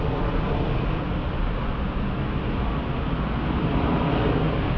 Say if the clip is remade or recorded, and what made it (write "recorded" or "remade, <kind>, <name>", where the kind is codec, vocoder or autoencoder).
recorded